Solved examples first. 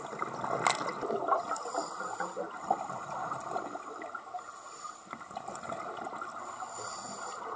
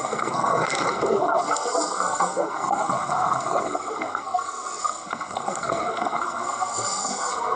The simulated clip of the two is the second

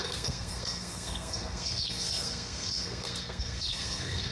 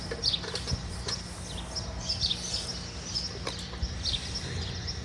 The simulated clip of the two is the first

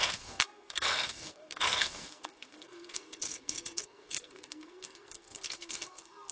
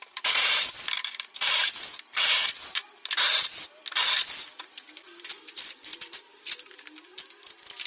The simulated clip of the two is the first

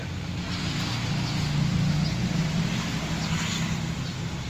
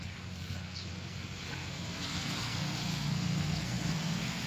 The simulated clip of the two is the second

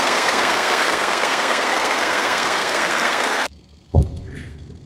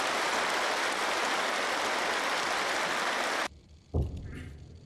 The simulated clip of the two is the first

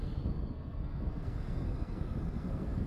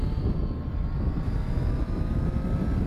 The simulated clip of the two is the first